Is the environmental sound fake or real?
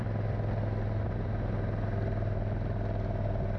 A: real